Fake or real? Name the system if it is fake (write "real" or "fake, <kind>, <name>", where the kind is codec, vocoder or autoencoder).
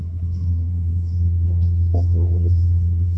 fake, codec, SNAC